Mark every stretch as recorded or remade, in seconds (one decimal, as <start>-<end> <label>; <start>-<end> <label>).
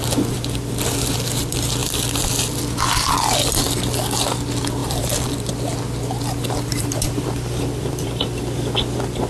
0.0-4.8 recorded; 4.8-5.5 remade; 5.5-6.7 recorded; 6.7-8.4 remade; 8.4-9.3 recorded